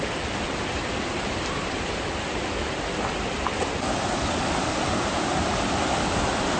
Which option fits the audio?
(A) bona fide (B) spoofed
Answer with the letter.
A